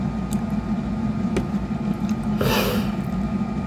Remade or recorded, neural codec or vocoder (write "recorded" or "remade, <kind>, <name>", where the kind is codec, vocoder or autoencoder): recorded